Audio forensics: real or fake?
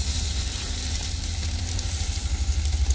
real